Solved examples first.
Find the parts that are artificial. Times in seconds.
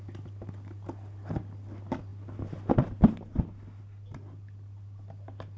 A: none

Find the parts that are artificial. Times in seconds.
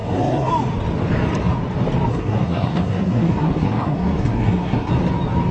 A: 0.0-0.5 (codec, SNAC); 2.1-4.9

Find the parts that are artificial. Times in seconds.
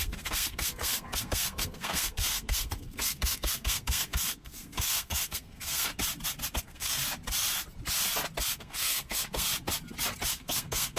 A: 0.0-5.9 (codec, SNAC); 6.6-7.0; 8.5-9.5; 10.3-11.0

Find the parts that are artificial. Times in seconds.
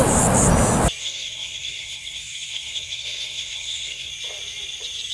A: 1.0-4.1 (codec, SNAC)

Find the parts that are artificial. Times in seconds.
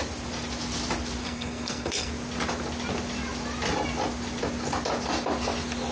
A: 1.2-2.1 (codec, SNAC)